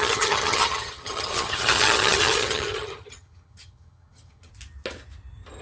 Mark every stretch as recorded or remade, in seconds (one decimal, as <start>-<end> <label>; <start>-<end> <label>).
0.0-4.5 remade; 4.5-5.6 recorded